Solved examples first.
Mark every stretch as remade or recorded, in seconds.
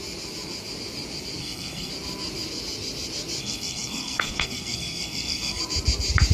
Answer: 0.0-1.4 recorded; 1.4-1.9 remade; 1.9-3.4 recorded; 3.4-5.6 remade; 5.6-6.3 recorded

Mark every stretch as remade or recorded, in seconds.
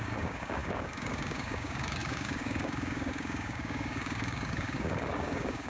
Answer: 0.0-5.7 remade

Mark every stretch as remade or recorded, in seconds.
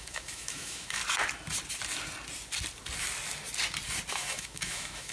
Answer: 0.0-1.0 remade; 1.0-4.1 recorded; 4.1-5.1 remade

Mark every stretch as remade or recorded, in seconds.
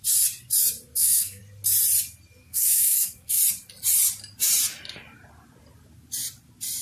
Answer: 0.0-0.9 recorded; 0.9-1.4 remade; 1.4-2.4 recorded; 2.4-3.4 remade; 3.4-6.8 recorded